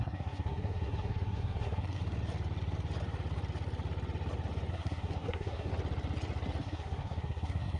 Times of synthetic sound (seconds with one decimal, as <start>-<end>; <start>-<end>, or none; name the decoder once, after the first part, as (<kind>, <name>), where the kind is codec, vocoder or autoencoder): 0.0-2.0 (codec, SNAC); 4.7-5.7; 6.6-7.8